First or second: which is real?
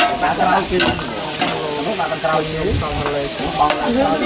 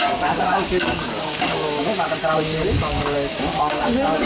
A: first